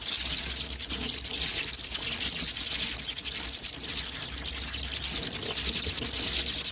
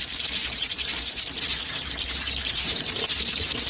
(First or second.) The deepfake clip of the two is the second